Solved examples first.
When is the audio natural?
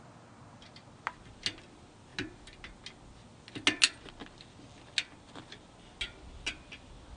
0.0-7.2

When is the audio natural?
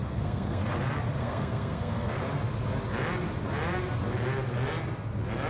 0.7-1.2; 2.2-5.5